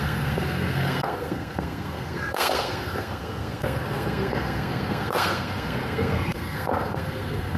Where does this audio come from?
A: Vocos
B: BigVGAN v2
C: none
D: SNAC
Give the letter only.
D